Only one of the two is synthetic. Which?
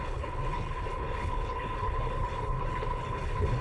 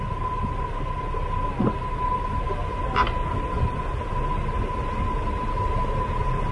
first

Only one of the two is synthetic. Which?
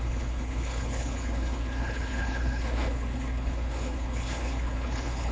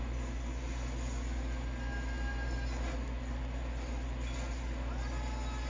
first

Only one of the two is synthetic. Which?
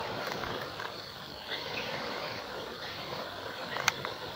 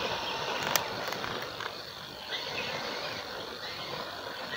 first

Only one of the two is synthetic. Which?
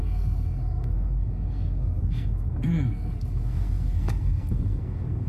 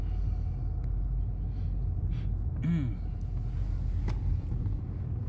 first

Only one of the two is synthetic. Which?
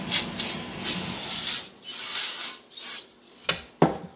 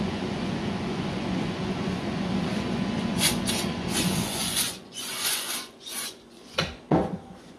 second